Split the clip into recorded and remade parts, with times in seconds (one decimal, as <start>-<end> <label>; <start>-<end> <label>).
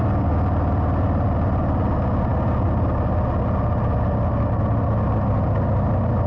0.0-6.3 recorded